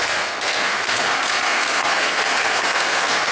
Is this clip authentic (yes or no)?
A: no